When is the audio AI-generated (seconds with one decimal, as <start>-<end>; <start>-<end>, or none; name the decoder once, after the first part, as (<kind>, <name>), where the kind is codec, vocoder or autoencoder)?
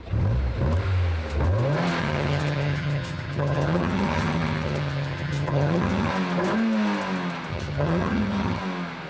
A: 2.0-6.1 (vocoder, HiFi-GAN); 7.5-8.6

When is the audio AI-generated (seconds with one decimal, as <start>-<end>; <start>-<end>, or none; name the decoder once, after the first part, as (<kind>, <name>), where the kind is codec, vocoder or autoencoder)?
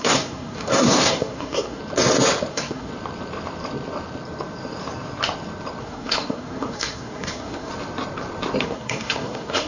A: 0.0-1.8 (codec, SNAC); 2.5-2.9; 5.8-7.7; 8.6-9.7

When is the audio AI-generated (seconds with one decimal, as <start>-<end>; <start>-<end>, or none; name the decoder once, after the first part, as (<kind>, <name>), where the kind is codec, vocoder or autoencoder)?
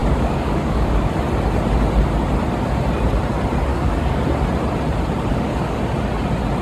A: 0.0-1.1 (codec, DAC); 3.7-4.2; 5.3-5.8